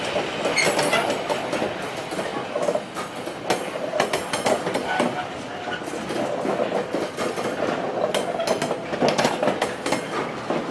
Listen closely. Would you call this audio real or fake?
real